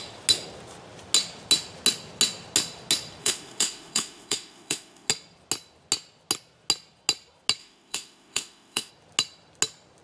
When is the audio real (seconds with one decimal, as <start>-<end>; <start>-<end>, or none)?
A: 0.0-3.2; 5.1-7.6; 8.9-10.0